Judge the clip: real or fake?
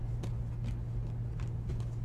real